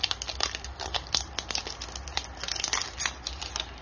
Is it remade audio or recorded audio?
recorded